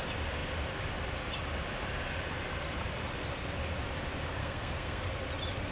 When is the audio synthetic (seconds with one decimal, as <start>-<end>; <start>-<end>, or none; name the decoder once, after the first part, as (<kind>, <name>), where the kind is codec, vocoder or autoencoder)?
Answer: 4.4-5.1 (codec, SNAC)